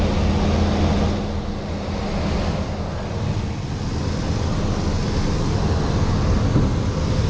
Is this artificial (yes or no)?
no